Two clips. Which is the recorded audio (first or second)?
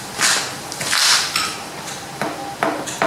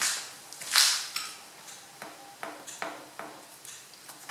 second